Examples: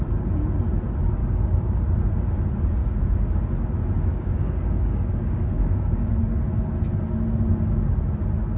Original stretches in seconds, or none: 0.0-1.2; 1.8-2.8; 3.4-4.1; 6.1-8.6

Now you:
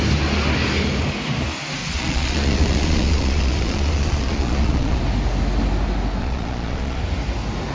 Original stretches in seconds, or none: 0.0-1.8; 5.0-6.2; 7.0-7.7

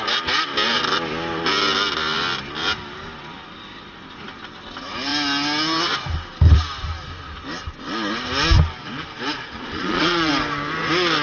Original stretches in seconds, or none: 0.0-9.4; 10.3-11.2

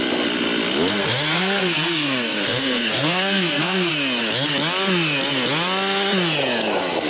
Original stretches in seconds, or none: 0.0-1.0; 3.9-7.1

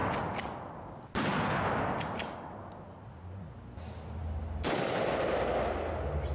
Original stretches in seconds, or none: 0.0-6.3

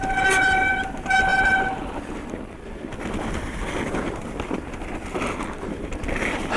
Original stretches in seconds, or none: 0.0-6.6